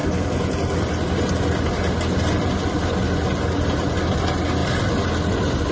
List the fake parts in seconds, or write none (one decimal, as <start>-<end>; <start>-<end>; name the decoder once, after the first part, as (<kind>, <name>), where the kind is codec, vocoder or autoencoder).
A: none